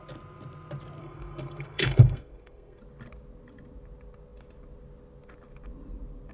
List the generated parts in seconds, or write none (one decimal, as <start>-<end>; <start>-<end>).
1.0-2.8